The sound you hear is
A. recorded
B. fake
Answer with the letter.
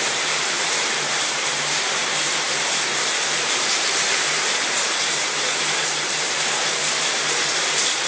B